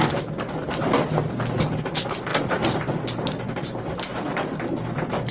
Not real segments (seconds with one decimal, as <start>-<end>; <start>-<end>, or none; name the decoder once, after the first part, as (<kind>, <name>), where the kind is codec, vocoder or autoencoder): 2.3-2.9 (vocoder, BigVGAN v2); 4.1-4.7

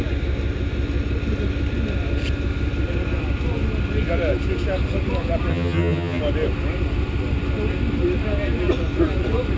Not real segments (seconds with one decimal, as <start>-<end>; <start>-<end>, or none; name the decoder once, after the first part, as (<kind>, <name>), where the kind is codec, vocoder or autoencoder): 5.5-6.2 (vocoder, HiFi-GAN)

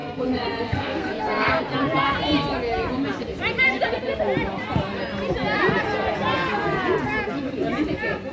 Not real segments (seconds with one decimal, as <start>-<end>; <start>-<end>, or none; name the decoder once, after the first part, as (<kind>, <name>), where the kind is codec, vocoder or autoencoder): 0.0-1.6 (codec, SNAC)

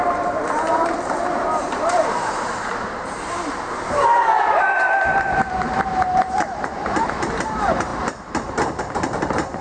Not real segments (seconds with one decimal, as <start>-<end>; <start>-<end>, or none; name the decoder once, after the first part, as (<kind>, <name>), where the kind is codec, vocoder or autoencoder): 0.0-9.6 (vocoder, BigVGAN v2)

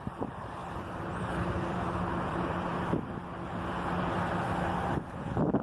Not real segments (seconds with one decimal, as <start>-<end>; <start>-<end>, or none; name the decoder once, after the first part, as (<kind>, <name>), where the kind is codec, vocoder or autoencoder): 0.0-2.7 (vocoder, BigVGAN v2); 5.0-5.6

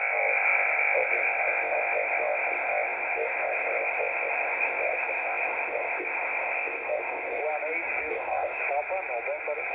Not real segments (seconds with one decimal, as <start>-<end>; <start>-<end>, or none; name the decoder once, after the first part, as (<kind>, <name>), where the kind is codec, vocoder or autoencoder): 0.0-7.4 (codec, ZipCodec); 8.1-8.6

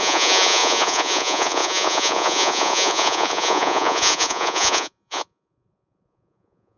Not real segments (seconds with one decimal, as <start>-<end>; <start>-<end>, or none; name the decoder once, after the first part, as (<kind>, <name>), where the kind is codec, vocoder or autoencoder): 0.0-6.8 (vocoder, Vocos)

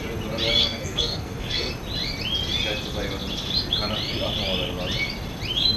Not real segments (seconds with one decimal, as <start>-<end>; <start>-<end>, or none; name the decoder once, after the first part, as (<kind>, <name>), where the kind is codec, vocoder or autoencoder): 0.6-1.7 (codec, SNAC)